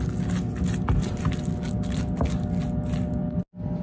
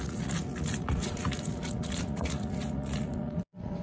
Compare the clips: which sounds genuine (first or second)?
first